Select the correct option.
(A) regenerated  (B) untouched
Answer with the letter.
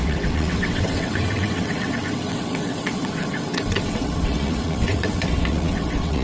A